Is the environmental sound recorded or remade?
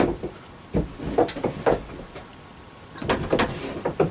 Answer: recorded